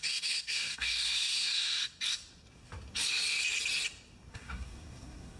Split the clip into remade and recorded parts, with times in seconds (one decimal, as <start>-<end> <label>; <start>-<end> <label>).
0.0-1.8 remade; 1.8-4.3 recorded; 4.3-5.4 remade